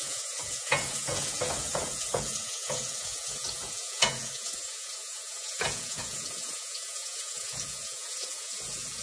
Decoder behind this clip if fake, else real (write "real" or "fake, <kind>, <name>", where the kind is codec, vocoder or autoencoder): fake, vocoder, Vocos